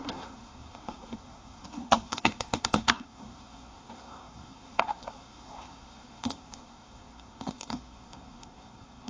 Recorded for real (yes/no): no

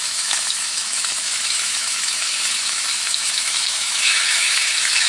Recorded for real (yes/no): no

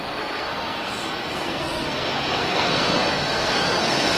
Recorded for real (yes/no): no